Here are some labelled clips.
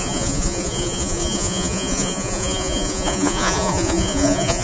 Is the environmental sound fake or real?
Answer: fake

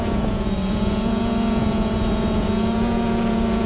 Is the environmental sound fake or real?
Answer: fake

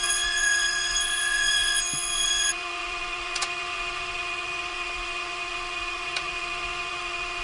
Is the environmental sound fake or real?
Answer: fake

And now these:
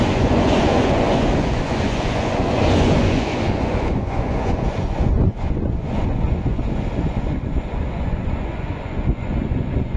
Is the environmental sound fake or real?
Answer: fake